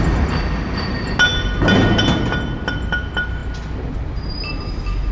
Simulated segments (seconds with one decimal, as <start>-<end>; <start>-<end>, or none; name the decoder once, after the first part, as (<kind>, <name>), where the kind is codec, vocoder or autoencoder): none